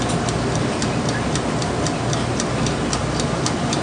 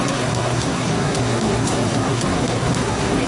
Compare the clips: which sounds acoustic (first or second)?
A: first